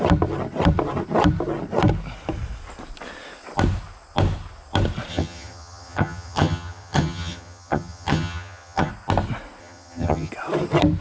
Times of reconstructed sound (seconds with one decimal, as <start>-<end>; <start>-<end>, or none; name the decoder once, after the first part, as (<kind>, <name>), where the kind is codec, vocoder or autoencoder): 5.1-8.9 (vocoder, HiFi-GAN); 9.6-10.3